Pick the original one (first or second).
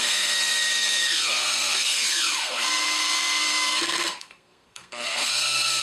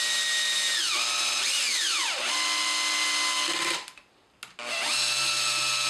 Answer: second